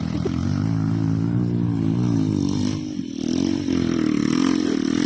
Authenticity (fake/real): real